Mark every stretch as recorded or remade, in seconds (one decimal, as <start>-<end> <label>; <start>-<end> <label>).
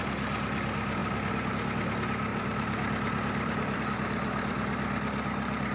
0.0-2.3 recorded; 2.3-3.8 remade; 3.8-5.7 recorded